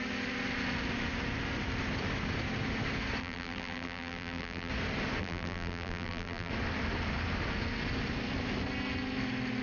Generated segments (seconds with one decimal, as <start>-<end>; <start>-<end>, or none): 3.2-4.7; 5.2-6.5